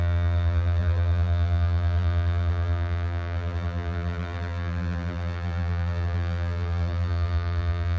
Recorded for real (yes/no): no